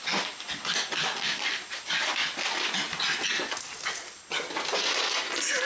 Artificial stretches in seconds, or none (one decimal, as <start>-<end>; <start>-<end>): none